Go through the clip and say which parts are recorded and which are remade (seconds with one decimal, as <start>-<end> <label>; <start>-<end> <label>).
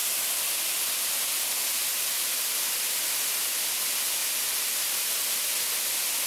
0.0-6.3 recorded